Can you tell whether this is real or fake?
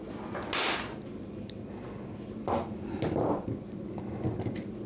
real